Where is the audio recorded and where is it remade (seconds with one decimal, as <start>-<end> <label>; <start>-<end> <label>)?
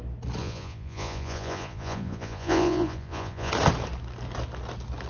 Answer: 0.0-0.4 recorded; 0.4-3.5 remade; 3.5-5.1 recorded